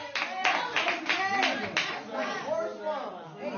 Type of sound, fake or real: real